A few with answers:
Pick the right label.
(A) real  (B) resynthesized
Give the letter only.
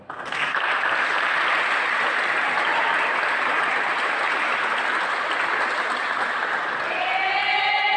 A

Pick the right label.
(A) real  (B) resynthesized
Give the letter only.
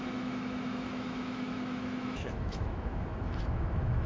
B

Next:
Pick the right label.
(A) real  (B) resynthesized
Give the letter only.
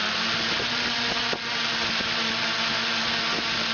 A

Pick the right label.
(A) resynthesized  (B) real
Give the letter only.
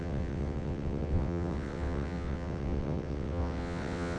A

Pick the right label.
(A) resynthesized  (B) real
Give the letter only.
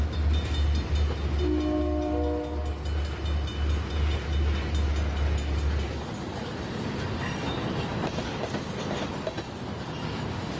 B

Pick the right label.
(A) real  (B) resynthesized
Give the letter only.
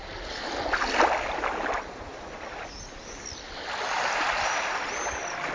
A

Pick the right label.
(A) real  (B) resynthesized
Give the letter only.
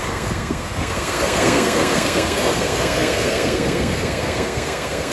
B